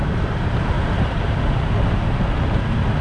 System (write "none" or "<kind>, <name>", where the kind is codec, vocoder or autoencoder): vocoder, BigVGAN v2